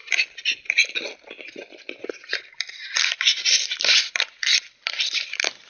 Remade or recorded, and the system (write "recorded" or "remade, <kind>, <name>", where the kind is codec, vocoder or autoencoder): recorded